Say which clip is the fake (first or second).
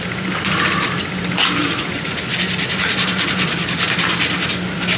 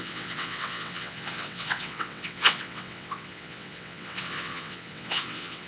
second